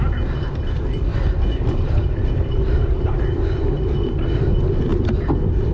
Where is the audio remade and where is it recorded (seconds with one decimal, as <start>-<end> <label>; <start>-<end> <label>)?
0.0-1.1 recorded; 1.1-3.2 remade; 3.2-5.7 recorded